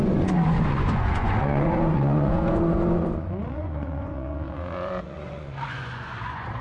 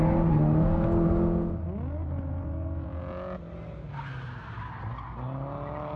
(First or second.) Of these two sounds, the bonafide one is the second